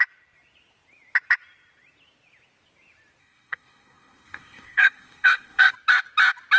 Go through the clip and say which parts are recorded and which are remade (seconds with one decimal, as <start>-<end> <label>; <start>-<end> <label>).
0.0-3.2 recorded; 3.2-5.7 remade; 5.7-6.6 recorded